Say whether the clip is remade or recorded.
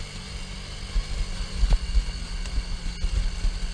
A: recorded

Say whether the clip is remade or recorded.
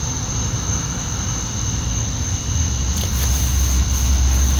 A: recorded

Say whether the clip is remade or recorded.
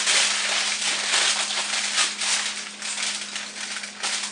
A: recorded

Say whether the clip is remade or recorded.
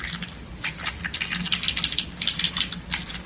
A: recorded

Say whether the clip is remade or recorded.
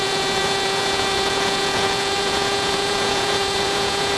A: remade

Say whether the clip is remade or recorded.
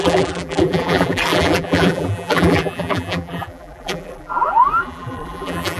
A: remade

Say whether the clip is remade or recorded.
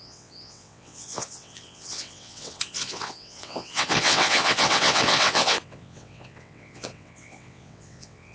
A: remade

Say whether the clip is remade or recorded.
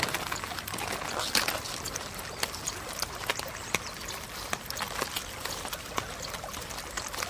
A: recorded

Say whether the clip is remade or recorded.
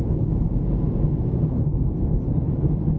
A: recorded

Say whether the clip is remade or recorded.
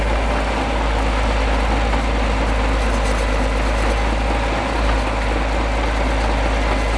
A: recorded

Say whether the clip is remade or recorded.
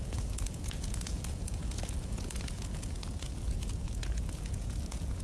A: remade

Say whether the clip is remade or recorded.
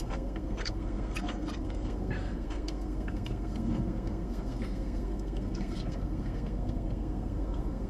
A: remade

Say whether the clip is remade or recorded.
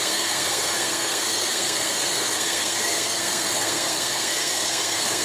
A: remade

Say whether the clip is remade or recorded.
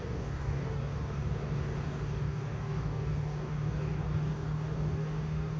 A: remade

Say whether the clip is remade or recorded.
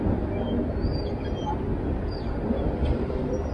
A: recorded